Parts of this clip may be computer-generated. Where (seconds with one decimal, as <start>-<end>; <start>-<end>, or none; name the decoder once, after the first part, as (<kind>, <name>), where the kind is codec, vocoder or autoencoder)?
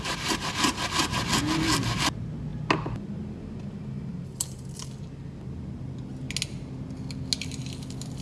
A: none